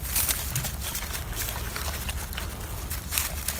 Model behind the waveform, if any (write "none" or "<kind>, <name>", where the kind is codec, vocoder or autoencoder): none